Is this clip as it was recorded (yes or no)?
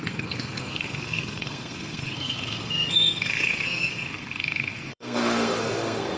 no